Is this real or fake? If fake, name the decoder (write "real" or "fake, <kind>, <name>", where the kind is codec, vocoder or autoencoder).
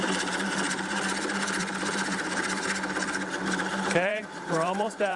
fake, vocoder, BigVGAN v2